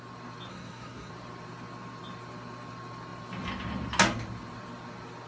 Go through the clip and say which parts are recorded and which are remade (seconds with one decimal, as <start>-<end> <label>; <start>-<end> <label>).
0.0-0.5 recorded; 0.5-1.1 remade; 1.1-5.3 recorded